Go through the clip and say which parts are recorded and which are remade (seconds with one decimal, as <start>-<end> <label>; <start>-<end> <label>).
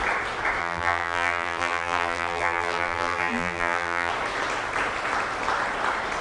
0.0-0.6 recorded; 0.6-4.1 remade; 4.1-6.2 recorded